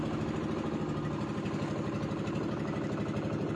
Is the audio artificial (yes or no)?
no